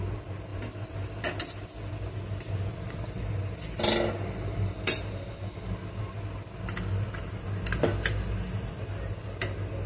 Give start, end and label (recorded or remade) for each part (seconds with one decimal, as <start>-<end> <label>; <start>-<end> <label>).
0.0-0.5 recorded; 0.5-1.4 remade; 1.4-9.9 recorded